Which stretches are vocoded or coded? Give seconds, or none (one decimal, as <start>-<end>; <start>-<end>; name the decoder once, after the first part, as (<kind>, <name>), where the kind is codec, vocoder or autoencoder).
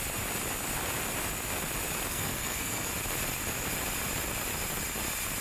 2.1-2.9 (codec, SNAC)